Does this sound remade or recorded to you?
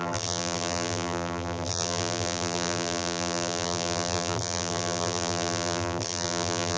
remade